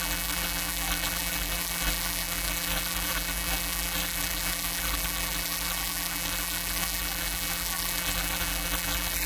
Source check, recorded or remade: remade